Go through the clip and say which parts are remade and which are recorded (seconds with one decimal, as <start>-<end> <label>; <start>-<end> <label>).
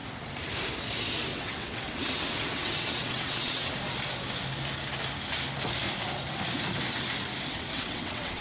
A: 0.0-1.3 recorded; 1.3-3.7 remade; 3.7-7.5 recorded; 7.5-8.4 remade